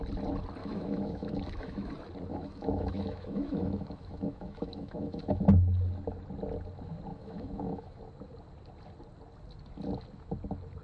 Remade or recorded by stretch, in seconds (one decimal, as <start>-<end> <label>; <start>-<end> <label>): 0.0-0.6 recorded; 0.6-1.9 remade; 1.9-2.3 recorded; 2.3-5.4 remade; 5.4-7.1 recorded; 7.1-8.0 remade; 8.0-10.8 recorded